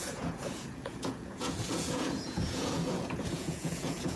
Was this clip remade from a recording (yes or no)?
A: yes